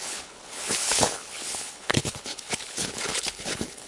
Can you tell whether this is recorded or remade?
remade